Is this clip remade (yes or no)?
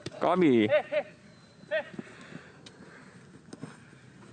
no